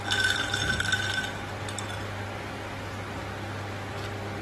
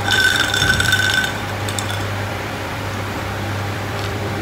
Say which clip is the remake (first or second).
second